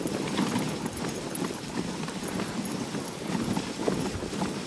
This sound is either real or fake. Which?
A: real